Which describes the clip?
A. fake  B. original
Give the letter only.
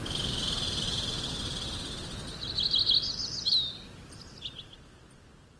B